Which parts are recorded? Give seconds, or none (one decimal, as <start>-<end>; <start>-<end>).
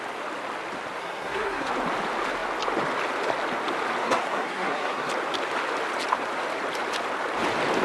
0.0-1.0; 1.7-4.0; 5.1-7.8